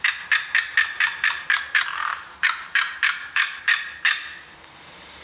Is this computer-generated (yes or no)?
yes